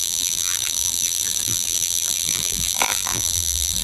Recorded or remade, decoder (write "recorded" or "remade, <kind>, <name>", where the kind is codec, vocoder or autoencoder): remade, vocoder, BigVGAN v2